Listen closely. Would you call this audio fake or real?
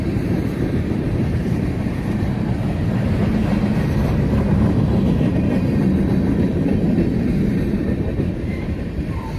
fake